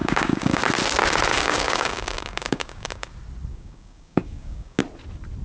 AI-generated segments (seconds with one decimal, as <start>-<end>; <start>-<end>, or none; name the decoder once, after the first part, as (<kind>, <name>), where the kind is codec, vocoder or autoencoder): 0.0-0.6 (codec, DAC); 1.3-3.1; 3.5-4.8